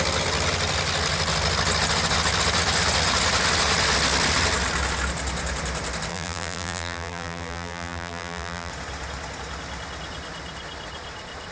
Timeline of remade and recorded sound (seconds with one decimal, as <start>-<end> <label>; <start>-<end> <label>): 0.0-6.1 recorded; 6.1-8.7 remade; 8.7-11.5 recorded